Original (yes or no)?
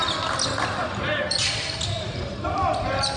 yes